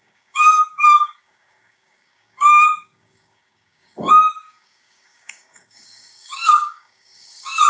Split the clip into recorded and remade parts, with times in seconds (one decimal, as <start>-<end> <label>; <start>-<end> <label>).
0.0-7.7 remade